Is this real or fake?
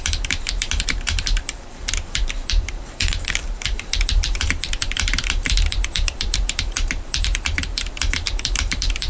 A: fake